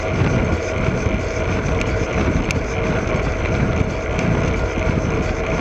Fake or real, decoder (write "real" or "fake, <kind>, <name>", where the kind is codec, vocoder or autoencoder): real